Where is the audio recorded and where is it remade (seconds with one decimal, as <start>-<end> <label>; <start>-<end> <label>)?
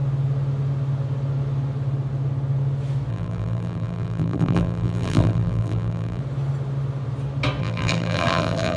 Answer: 0.0-3.1 recorded; 3.1-6.2 remade; 6.2-7.6 recorded; 7.6-8.8 remade